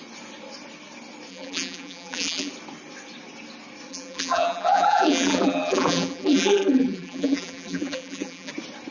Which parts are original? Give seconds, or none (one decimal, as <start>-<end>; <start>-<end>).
0.0-1.3; 2.5-3.9; 8.5-8.9

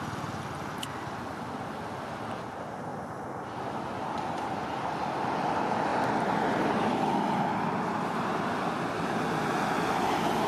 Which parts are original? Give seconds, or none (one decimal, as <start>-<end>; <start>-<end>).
0.0-5.9; 7.4-10.5

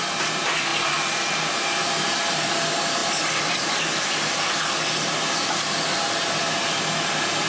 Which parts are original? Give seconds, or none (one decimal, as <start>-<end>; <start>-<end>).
0.0-3.0; 4.6-7.5

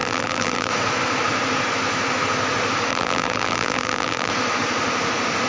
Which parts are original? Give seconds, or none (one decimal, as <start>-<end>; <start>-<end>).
0.7-2.9; 4.3-5.5

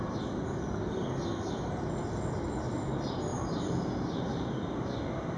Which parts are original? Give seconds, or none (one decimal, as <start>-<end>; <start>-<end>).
0.0-3.3; 5.0-5.4

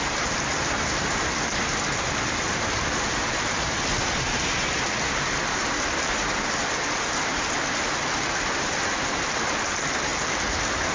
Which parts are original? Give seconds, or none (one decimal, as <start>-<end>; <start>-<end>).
0.0-10.9

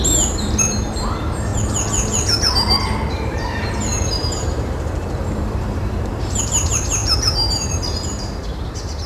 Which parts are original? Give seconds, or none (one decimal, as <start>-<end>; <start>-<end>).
1.5-3.1

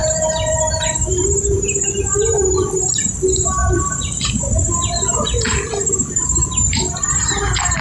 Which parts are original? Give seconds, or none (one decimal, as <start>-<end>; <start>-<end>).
0.0-3.6; 5.4-7.8